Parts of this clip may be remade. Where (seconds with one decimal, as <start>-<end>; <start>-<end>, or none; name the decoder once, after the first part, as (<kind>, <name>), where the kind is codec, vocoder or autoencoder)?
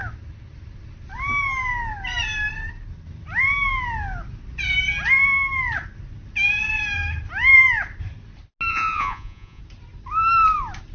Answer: 8.7-9.6 (vocoder, Vocos)